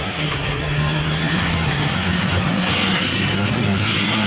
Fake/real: fake